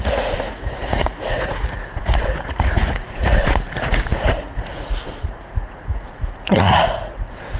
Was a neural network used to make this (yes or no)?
yes